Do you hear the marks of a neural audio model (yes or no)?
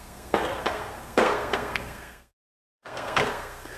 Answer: yes